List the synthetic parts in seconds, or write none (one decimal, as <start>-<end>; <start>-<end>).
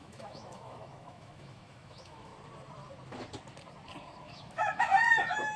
0.0-2.3; 4.2-4.9